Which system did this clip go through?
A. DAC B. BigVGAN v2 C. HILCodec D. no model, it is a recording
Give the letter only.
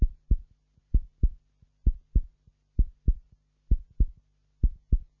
D